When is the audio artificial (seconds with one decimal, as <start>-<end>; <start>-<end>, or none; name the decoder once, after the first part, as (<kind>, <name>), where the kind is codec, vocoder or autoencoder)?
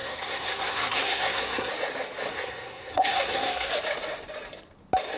0.0-1.7 (codec, SNAC); 2.3-3.7